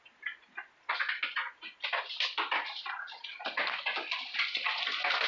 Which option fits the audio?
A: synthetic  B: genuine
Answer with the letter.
B